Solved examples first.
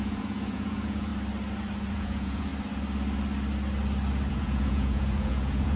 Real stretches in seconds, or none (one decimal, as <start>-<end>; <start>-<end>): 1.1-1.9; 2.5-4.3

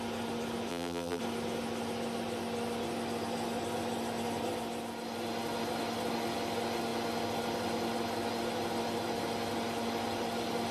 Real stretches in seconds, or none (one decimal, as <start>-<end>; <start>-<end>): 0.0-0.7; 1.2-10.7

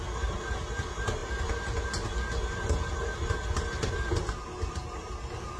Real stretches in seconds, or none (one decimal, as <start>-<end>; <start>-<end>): 0.0-4.8

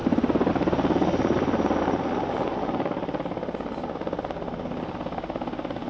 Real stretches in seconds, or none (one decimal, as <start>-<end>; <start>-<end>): 0.0-5.9

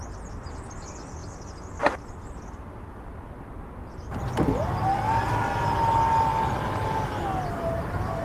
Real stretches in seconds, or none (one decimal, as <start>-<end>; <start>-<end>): 0.0-8.2

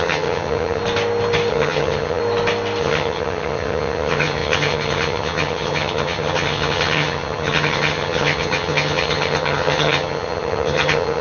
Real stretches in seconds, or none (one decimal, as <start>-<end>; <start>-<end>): 0.8-1.5; 2.2-2.8